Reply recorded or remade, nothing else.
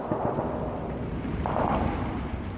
recorded